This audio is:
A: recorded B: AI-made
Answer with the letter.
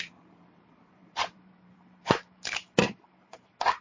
B